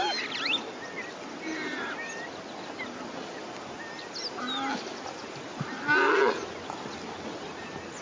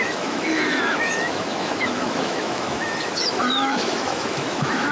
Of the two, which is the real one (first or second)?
first